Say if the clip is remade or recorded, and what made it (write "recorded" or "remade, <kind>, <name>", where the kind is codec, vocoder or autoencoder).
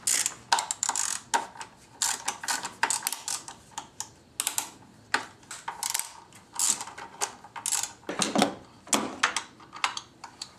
recorded